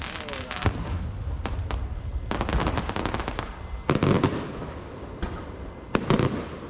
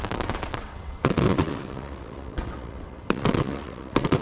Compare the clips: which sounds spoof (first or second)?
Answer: second